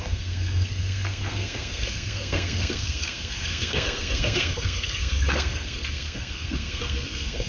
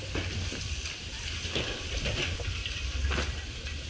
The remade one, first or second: first